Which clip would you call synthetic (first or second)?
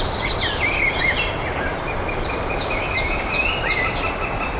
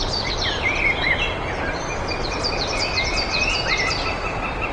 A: first